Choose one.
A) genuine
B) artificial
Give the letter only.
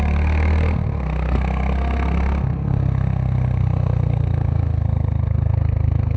B